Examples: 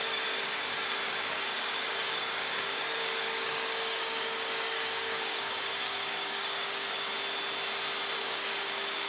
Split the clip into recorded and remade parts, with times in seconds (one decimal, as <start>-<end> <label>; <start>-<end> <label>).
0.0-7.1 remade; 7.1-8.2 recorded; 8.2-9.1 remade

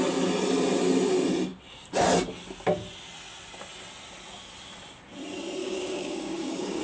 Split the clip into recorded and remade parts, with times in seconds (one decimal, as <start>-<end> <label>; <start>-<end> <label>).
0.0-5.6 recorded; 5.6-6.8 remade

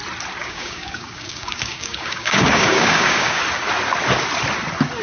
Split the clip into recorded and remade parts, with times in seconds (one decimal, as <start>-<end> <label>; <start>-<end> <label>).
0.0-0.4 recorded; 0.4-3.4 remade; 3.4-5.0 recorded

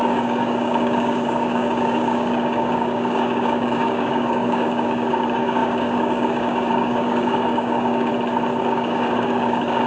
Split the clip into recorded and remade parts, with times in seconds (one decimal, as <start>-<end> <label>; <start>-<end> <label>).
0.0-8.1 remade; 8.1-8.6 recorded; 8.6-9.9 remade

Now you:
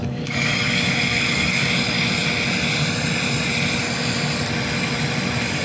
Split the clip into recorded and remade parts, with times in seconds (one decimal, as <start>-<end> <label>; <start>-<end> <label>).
0.0-1.6 remade; 1.6-5.6 recorded

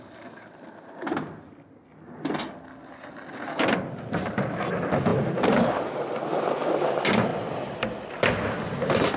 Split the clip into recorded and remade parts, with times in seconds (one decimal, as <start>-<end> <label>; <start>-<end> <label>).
0.0-9.2 recorded

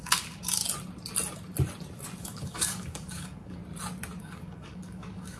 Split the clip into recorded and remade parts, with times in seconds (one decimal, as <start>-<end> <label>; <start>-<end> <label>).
0.0-0.6 remade; 0.6-2.2 recorded; 2.2-3.6 remade; 3.6-4.2 recorded; 4.2-5.4 remade